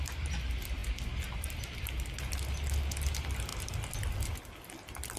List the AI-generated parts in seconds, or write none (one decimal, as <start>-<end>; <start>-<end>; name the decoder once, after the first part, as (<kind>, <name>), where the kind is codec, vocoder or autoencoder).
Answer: none